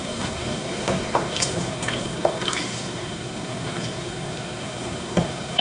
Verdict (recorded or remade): remade